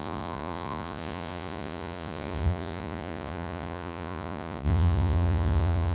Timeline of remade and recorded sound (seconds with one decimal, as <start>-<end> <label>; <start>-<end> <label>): 0.0-5.9 remade